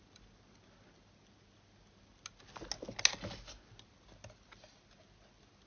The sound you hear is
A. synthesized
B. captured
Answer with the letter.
B